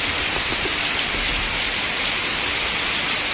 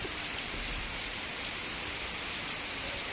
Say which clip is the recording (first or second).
first